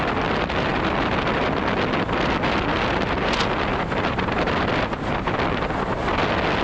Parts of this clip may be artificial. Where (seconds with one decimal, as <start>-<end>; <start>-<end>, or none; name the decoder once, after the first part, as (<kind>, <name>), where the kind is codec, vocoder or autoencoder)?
3.7-4.5 (vocoder, BigVGAN v2)